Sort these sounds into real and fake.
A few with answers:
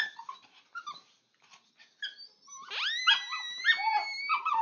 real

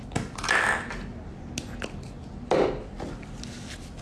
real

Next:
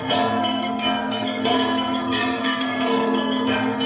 fake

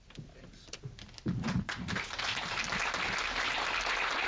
real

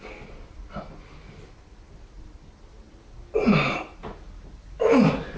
real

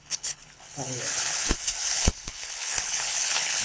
fake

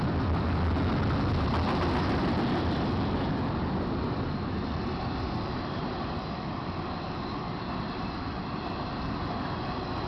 real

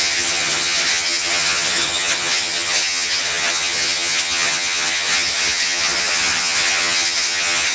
fake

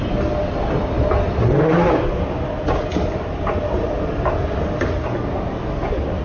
real